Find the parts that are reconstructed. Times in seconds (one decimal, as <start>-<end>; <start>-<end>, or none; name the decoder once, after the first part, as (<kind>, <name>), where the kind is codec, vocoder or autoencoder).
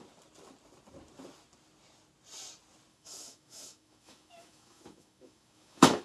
2.9-6.0 (autoencoder, DAC-VAE)